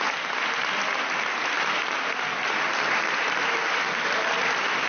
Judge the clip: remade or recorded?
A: recorded